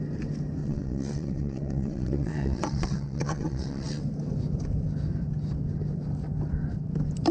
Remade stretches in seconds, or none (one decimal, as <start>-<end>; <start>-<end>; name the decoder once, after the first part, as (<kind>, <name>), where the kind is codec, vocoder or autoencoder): 0.6-4.0 (vocoder, WaveNeXt)